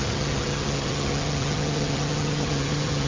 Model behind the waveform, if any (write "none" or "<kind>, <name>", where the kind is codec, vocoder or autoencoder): vocoder, HiFi-GAN